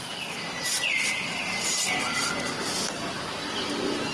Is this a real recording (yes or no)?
yes